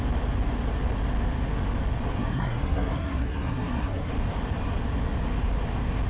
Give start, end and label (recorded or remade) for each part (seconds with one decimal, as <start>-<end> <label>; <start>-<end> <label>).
0.0-2.2 recorded; 2.2-4.1 remade; 4.1-6.1 recorded